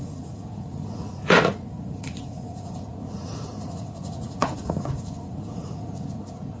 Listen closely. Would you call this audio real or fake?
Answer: fake